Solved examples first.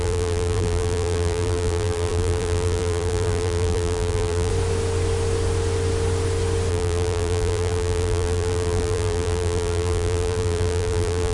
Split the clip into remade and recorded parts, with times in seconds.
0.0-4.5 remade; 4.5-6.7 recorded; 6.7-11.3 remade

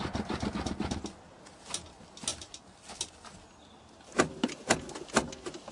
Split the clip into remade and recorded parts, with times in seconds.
0.0-5.7 recorded

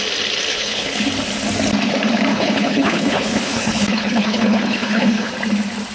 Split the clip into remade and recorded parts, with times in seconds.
0.0-0.5 recorded; 0.5-1.1 remade; 1.1-2.3 recorded; 2.3-5.3 remade; 5.3-5.9 recorded